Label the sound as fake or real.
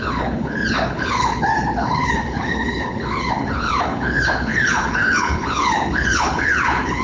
fake